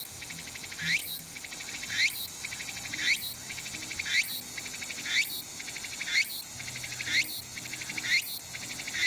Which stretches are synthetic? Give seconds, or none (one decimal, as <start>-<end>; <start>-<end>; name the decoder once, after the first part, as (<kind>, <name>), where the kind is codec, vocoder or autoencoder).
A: none